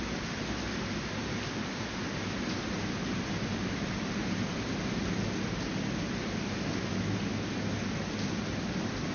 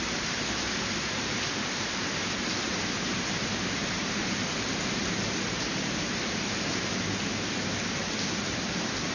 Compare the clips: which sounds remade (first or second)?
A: second